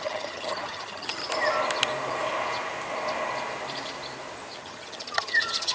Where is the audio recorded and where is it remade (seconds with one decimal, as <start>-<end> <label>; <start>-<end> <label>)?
0.0-1.2 remade; 1.2-4.6 recorded; 4.6-5.7 remade